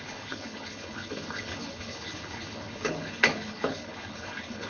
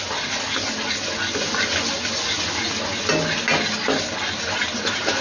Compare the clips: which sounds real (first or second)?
second